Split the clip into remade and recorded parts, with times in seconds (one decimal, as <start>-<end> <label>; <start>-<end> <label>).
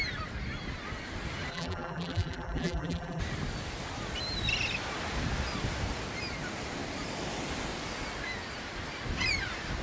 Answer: 0.0-1.5 recorded; 1.5-3.2 remade; 3.2-9.8 recorded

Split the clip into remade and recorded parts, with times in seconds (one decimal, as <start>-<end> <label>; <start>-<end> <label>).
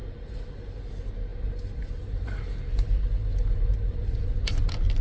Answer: 0.0-0.8 remade; 0.8-1.3 recorded; 1.3-4.3 remade; 4.3-5.0 recorded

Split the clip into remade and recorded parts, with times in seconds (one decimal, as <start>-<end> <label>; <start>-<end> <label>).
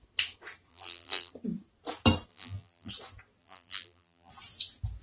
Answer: 0.0-0.7 recorded; 0.7-1.3 remade; 1.3-2.3 recorded; 2.3-2.9 remade; 2.9-3.4 recorded; 3.4-4.3 remade; 4.3-5.0 recorded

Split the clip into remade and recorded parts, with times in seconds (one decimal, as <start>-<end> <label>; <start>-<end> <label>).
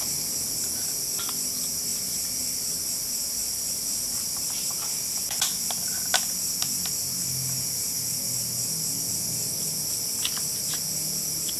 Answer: 0.0-1.9 recorded; 1.9-2.7 remade; 2.7-3.4 recorded; 3.4-5.1 remade; 5.1-11.6 recorded